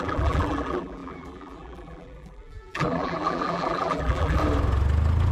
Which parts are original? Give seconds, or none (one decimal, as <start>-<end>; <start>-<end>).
4.4-5.3